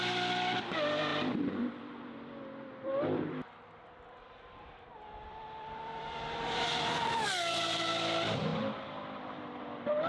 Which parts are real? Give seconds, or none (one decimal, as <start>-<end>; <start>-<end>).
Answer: 2.4-5.2; 8.5-9.6